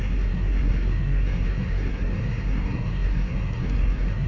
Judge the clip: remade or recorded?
remade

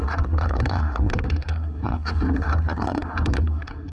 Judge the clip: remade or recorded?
remade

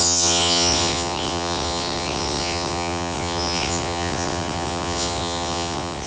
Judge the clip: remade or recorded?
remade